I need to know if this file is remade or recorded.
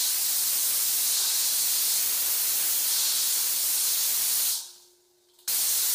recorded